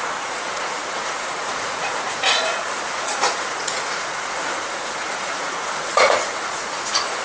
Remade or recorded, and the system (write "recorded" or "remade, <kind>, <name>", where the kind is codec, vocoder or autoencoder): remade, vocoder, Vocos